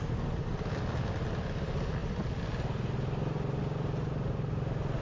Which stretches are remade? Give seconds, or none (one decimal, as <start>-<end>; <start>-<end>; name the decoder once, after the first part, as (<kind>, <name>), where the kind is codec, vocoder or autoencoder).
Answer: none